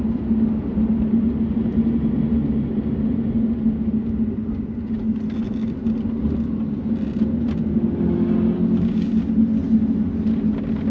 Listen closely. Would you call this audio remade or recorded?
recorded